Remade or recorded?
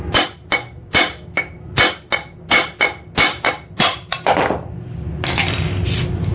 recorded